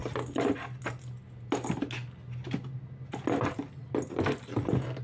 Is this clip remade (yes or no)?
no